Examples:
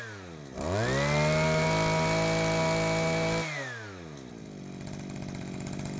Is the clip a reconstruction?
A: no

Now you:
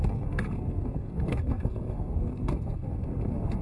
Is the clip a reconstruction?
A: yes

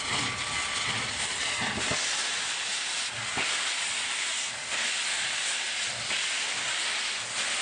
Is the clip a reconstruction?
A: no